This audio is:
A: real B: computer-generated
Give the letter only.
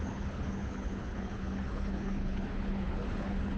B